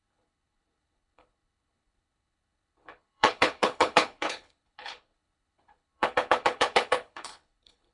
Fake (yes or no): yes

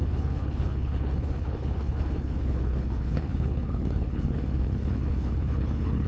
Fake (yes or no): yes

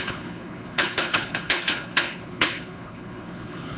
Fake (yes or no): yes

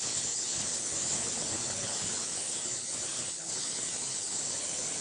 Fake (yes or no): yes